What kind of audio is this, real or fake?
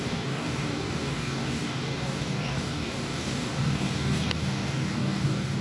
fake